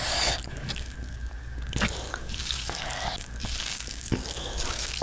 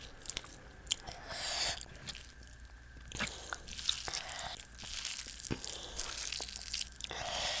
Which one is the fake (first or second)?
first